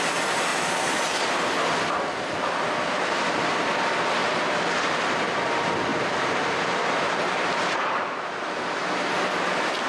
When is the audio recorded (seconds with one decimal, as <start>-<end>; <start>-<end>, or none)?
0.0-0.5; 1.2-4.2; 4.7-5.9; 8.6-9.9